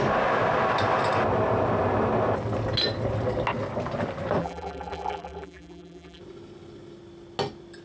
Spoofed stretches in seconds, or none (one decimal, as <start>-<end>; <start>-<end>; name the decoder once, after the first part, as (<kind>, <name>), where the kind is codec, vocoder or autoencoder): 4.4-6.2 (vocoder, BigVGAN v2)